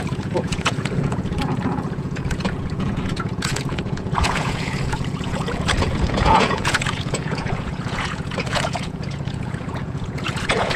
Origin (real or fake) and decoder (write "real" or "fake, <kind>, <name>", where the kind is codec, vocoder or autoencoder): fake, vocoder, Vocos